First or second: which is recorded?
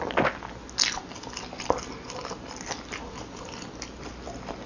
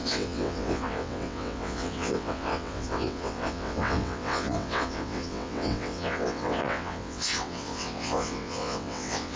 first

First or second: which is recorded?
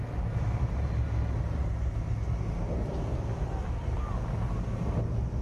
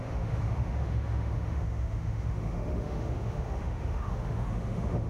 first